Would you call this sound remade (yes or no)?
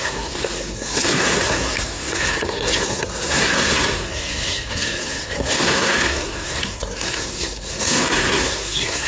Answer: yes